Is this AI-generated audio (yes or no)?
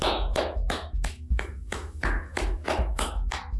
yes